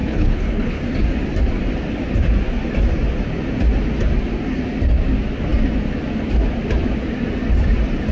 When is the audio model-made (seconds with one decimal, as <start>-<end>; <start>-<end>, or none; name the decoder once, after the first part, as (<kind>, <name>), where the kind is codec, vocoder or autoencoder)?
0.0-0.8 (codec, HILCodec)

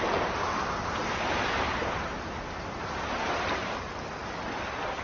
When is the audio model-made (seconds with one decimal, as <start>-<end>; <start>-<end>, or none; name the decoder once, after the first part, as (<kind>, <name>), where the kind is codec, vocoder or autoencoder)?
0.0-4.2 (vocoder, BigVGAN v2)

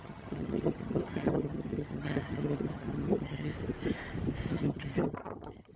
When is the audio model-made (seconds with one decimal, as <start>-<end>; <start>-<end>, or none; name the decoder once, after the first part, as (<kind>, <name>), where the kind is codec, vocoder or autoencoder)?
0.0-3.5 (vocoder, HiFi-GAN); 4.5-5.8

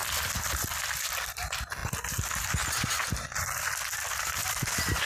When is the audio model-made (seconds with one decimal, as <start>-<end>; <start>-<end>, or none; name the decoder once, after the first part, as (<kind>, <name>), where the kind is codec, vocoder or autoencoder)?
0.0-1.0 (vocoder, BigVGAN v2); 4.4-5.1

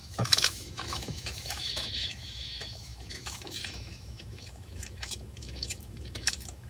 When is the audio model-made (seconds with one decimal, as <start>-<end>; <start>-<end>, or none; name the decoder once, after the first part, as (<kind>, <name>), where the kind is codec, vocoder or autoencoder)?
0.0-6.7 (autoencoder, DAC-VAE)

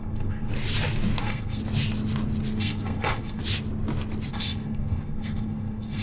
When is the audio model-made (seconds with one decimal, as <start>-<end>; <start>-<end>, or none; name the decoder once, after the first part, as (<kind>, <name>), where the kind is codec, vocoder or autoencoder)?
0.0-0.5 (codec, SNAC); 1.2-1.6; 2.6-3.4; 4.3-6.0

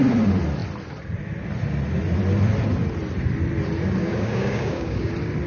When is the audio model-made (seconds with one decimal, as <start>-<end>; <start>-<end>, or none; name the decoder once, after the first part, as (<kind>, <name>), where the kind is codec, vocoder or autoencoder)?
4.0-5.1 (codec, DAC)

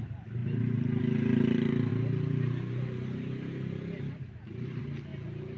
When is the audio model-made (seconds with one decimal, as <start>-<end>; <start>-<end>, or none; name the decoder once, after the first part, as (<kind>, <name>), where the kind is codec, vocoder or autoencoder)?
none